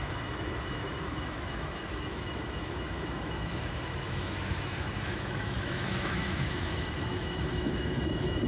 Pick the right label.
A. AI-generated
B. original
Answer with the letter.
A